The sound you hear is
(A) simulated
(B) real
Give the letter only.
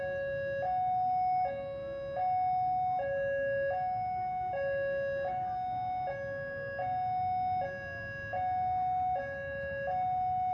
B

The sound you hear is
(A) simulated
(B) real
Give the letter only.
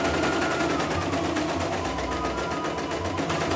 B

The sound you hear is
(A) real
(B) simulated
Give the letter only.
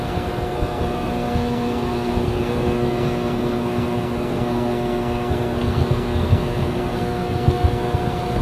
B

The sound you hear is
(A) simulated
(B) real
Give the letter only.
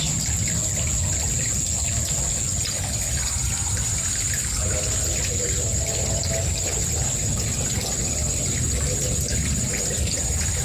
B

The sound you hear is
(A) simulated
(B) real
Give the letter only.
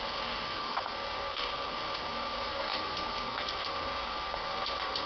A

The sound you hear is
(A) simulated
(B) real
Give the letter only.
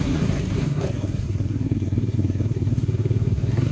A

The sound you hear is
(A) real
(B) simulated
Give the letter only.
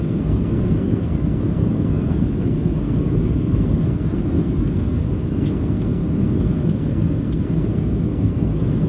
B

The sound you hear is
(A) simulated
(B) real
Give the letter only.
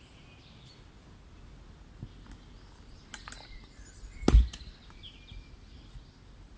B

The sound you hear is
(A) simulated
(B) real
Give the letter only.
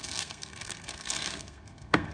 A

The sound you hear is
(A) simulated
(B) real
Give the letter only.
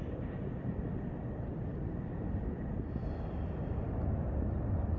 B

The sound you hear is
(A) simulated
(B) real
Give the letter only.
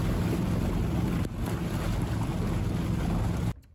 B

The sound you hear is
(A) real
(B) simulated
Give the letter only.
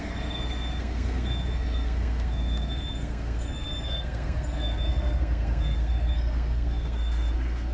B